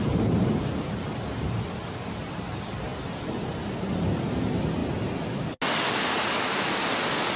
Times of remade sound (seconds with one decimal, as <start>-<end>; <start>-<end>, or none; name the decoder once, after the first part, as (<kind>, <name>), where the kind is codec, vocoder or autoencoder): none